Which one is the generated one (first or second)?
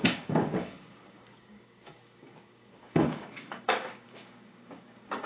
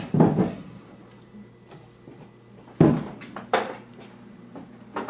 first